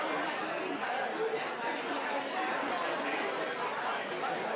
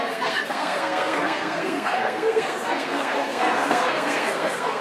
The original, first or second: first